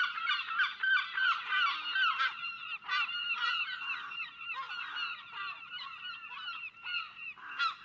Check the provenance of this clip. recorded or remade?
recorded